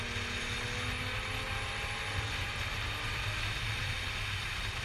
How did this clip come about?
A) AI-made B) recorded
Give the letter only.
B